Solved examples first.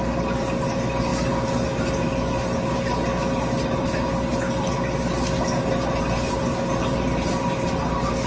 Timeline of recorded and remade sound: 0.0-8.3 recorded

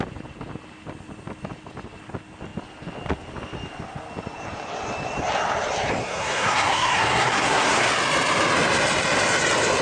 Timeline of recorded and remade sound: 0.0-6.0 recorded; 6.0-7.9 remade; 7.9-9.8 recorded

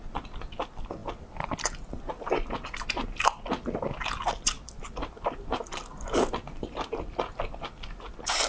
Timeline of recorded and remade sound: 0.0-8.5 recorded

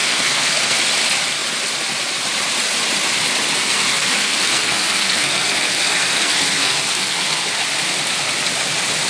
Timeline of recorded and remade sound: 0.0-0.8 remade; 0.8-3.5 recorded; 3.5-7.4 remade; 7.4-9.1 recorded

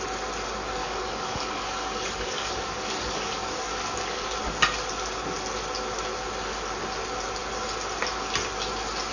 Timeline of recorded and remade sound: 0.0-0.8 recorded; 0.8-4.4 remade; 4.4-9.1 recorded

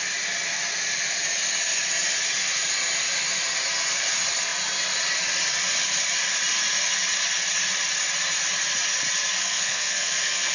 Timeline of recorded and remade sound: 0.0-9.4 recorded; 9.4-10.5 remade